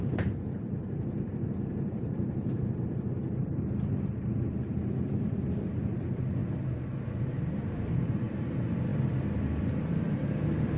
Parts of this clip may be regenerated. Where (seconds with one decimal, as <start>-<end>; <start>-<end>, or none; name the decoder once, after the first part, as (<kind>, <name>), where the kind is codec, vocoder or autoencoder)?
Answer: 0.0-6.4 (vocoder, BigVGAN v2); 7.0-8.9; 9.6-10.8